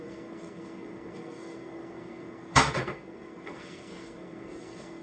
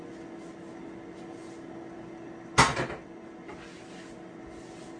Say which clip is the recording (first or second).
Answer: second